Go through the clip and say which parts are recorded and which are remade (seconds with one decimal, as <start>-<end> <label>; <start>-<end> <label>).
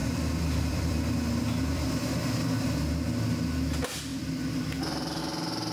0.0-2.3 remade; 2.3-4.1 recorded; 4.1-5.2 remade; 5.2-5.7 recorded